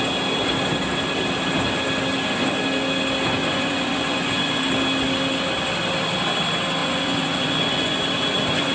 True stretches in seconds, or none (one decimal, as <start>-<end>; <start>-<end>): 0.0-3.4; 4.6-6.8